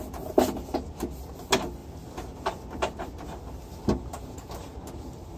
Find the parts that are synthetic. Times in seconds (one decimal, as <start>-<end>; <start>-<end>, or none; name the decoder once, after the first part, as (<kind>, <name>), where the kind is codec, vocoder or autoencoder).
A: none